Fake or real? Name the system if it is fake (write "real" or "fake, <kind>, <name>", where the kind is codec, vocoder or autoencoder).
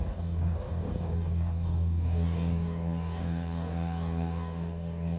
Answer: fake, codec, DAC